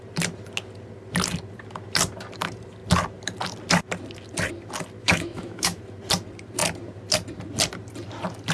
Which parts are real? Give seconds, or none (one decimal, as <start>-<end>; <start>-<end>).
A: 0.0-5.0; 5.8-8.5